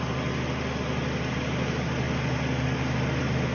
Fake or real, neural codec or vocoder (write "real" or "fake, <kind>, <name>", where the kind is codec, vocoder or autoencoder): real